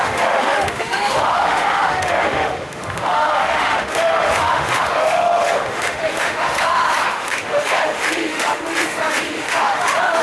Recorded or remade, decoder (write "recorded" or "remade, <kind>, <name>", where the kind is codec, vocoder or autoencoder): remade, autoencoder, DAC-VAE